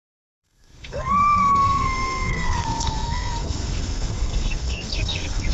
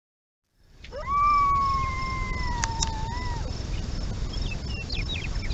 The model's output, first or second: first